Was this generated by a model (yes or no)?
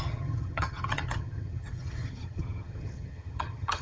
yes